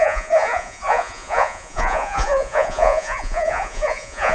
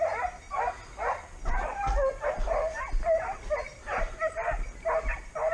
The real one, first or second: second